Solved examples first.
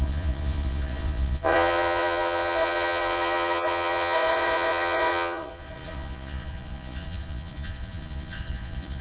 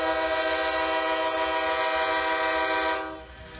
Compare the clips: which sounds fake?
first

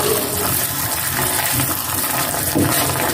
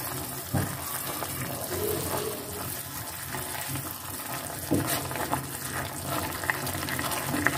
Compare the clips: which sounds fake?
first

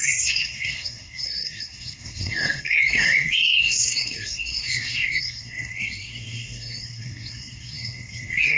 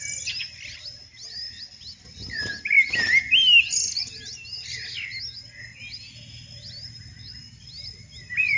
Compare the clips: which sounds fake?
first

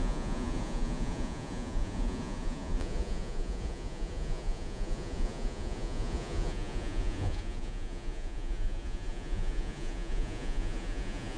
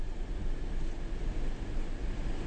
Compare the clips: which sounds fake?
first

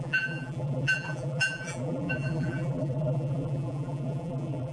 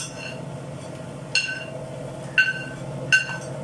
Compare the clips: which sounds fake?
first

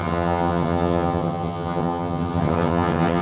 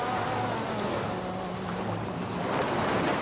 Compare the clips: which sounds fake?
first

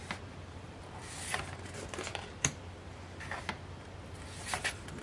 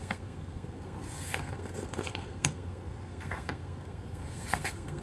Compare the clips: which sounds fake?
second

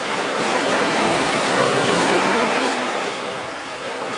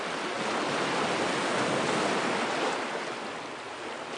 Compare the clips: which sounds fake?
first